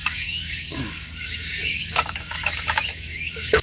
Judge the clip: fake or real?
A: fake